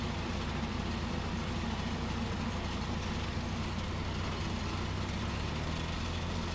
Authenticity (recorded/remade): recorded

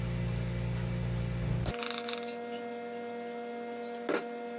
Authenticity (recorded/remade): recorded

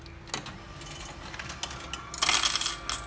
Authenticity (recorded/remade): recorded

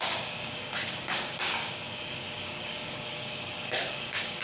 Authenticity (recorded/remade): remade